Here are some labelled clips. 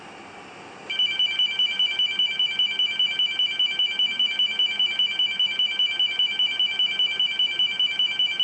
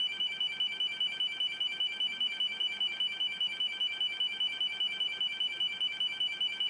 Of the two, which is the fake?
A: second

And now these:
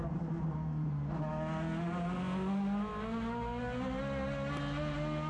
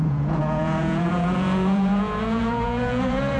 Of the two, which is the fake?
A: second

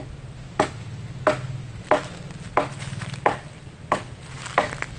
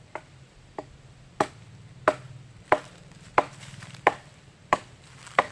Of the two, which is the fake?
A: second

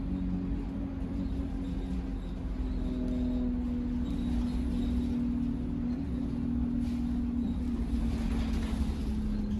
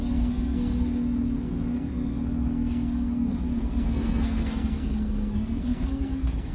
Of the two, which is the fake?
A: second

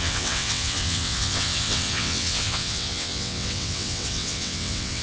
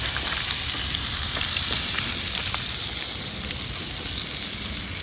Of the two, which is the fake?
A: first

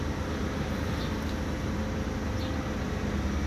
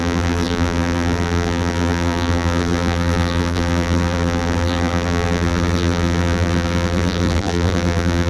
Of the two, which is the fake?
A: second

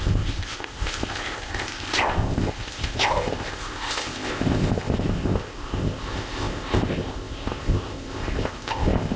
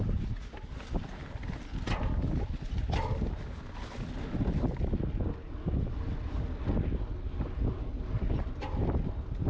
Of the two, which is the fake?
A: first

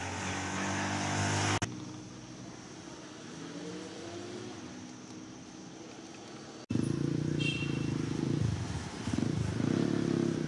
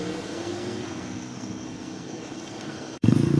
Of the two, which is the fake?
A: second